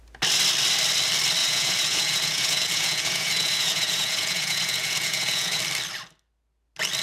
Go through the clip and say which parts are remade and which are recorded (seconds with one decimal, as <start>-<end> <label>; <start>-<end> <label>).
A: 0.0-1.4 recorded; 1.4-5.6 remade; 5.6-7.0 recorded